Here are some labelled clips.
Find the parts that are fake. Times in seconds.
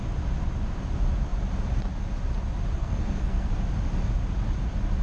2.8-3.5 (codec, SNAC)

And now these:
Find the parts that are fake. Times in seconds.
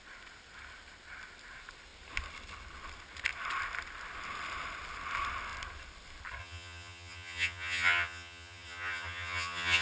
6.4-9.8 (vocoder, HiFi-GAN)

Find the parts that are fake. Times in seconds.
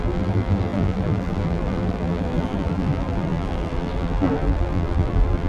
0.0-5.5 (vocoder, BigVGAN v2)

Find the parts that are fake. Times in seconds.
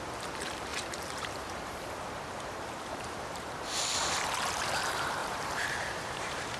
0.7-3.8 (vocoder, BigVGAN v2); 5.2-6.6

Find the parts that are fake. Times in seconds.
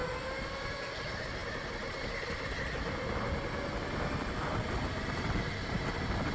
none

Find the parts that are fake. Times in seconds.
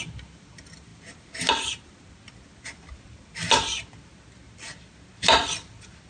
none